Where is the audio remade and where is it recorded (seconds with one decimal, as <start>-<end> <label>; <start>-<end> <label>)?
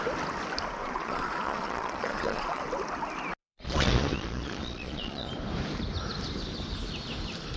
0.0-0.8 recorded; 0.8-2.6 remade; 2.6-3.4 recorded; 3.4-5.3 remade; 5.3-7.6 recorded